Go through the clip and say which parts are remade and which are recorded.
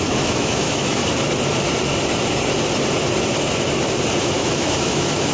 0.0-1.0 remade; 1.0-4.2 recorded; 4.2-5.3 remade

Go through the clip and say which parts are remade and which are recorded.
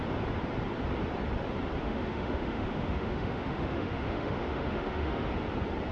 0.0-1.8 recorded; 1.8-5.3 remade; 5.3-5.9 recorded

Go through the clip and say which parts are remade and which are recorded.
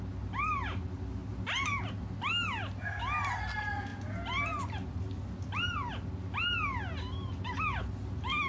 0.0-8.5 recorded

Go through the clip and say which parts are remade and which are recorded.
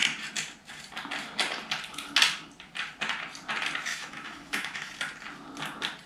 0.0-3.9 recorded; 3.9-4.9 remade; 4.9-6.1 recorded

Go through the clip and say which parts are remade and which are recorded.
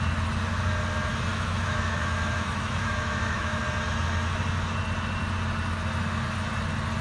0.0-1.3 recorded; 1.3-3.6 remade; 3.6-7.0 recorded